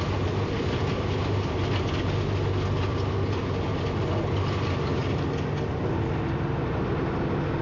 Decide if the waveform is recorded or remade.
recorded